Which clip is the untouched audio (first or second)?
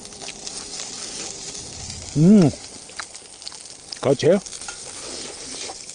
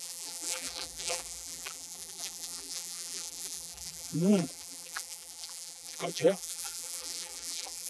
first